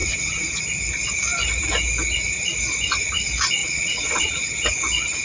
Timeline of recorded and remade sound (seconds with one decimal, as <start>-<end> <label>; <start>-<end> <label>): 0.0-0.6 remade; 0.6-3.6 recorded; 3.6-4.7 remade; 4.7-5.2 recorded